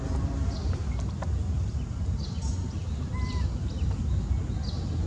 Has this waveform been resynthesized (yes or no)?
no